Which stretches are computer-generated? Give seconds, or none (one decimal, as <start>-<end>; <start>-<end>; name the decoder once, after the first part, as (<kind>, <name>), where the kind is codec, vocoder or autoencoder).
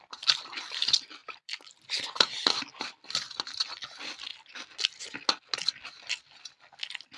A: 1.2-2.6 (vocoder, BigVGAN v2)